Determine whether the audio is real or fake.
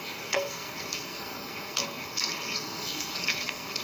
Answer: fake